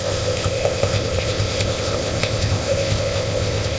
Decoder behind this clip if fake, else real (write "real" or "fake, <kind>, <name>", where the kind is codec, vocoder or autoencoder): fake, codec, ZipCodec